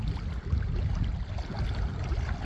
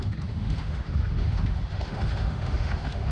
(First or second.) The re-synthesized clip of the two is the second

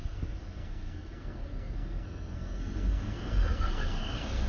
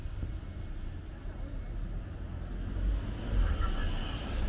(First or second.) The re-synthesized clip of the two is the first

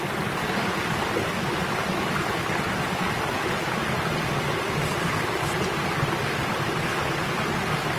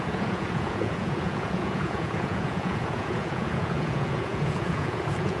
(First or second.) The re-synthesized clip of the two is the second